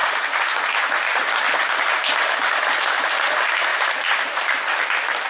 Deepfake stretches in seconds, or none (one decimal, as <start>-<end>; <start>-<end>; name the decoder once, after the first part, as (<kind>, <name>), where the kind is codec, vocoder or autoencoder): 0.0-0.6 (vocoder, BigVGAN v2); 3.7-4.8